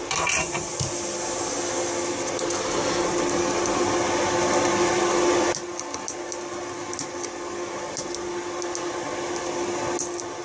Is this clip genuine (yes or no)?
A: yes